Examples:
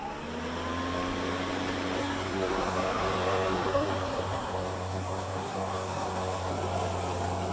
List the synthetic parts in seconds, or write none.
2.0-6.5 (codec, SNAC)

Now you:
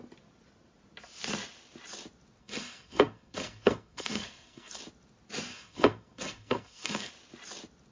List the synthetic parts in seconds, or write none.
2.4-4.8 (codec, SNAC); 5.5-7.1

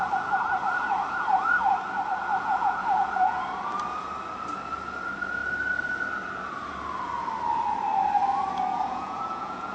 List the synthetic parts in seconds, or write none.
2.3-3.4 (vocoder, Vocos); 8.7-9.7

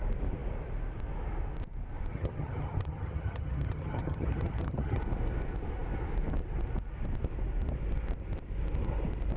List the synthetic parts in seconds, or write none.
2.1-5.0 (vocoder, HiFi-GAN)

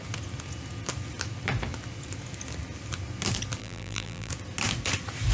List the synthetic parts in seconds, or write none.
3.6-4.3 (vocoder, BigVGAN v2)

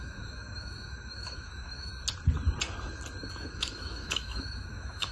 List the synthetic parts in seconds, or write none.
0.0-1.9 (autoencoder, DAC-VAE); 3.3-5.1